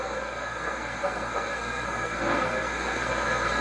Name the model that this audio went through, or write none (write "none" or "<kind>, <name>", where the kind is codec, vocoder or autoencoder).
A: codec, SNAC